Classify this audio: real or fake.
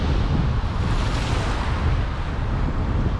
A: real